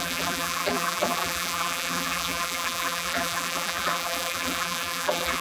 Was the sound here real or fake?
fake